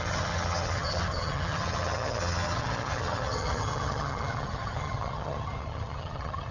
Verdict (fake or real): fake